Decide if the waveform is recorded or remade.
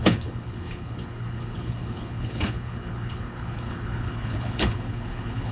remade